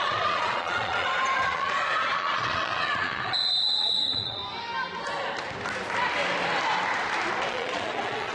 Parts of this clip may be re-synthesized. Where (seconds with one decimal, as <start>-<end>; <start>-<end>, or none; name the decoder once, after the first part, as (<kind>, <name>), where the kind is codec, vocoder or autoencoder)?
0.0-4.4 (vocoder, Vocos); 7.5-8.3